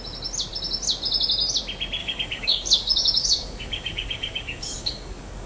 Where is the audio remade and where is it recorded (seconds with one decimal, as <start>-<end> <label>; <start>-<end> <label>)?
0.0-2.0 recorded; 2.0-5.5 remade